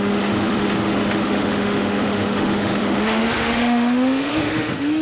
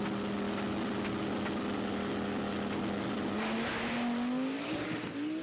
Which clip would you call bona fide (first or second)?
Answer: second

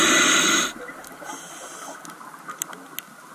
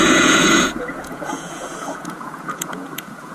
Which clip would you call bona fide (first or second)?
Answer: first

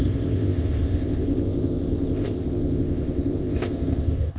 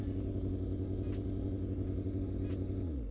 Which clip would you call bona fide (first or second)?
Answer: second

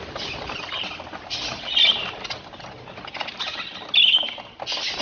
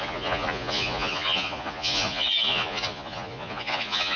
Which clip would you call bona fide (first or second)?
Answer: first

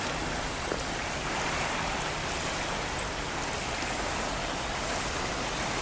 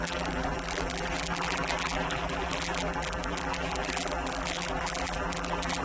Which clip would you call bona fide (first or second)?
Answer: first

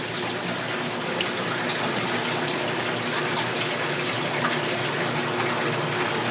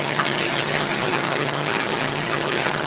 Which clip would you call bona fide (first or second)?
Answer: first